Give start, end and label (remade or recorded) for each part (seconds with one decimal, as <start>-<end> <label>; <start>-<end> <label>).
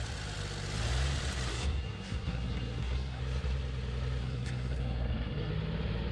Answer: 0.0-1.5 recorded; 1.5-3.2 remade; 3.2-4.2 recorded; 4.2-5.5 remade; 5.5-6.1 recorded